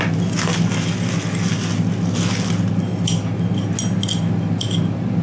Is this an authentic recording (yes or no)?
yes